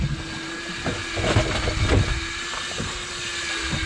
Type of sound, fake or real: real